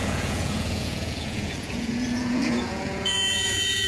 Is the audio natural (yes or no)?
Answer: no